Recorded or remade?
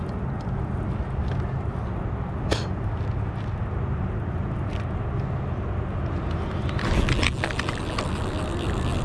recorded